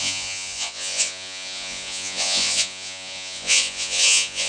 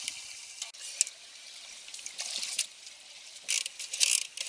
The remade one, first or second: first